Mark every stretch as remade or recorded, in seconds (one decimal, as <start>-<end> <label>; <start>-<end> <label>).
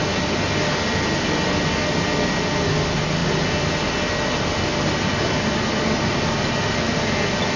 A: 0.0-7.6 recorded